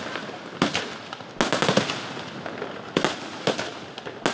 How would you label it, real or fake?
real